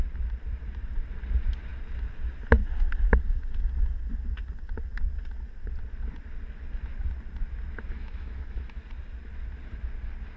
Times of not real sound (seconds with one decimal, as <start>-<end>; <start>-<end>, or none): 7.9-8.8